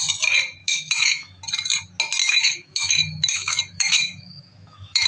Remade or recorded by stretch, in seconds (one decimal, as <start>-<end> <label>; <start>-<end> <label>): 0.0-0.6 recorded; 0.6-1.4 remade; 1.4-2.2 recorded; 2.2-5.1 remade